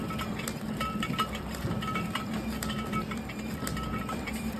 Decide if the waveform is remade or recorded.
remade